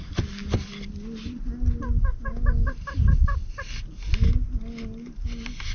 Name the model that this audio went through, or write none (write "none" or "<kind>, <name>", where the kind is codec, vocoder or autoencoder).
none